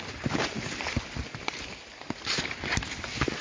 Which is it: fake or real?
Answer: real